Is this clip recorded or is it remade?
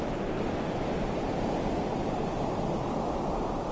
recorded